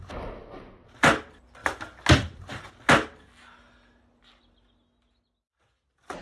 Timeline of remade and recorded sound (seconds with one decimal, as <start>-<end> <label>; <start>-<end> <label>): 0.0-6.2 recorded